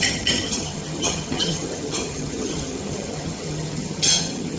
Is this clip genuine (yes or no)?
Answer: no